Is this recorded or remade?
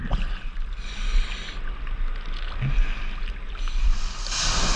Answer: recorded